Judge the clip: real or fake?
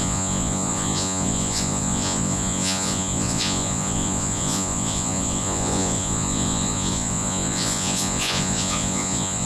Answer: fake